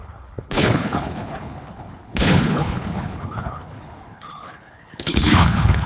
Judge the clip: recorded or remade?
remade